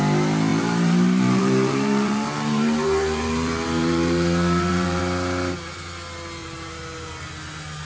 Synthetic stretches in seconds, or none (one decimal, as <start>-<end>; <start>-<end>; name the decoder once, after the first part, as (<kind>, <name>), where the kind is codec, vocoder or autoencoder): 0.5-5.0 (vocoder, BigVGAN v2); 6.4-7.1